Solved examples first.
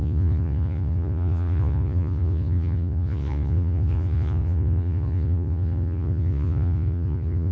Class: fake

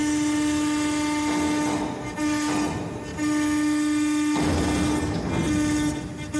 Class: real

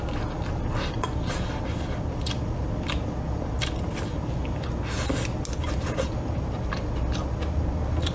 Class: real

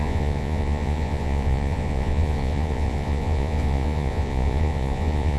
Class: fake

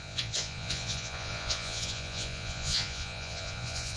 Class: fake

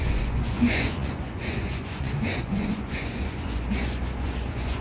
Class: fake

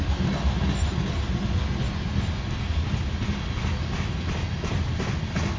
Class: real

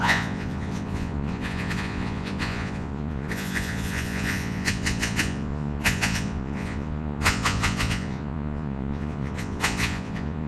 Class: fake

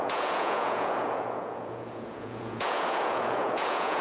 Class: fake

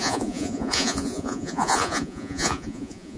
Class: fake